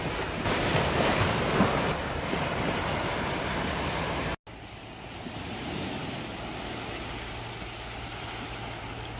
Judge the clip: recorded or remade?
recorded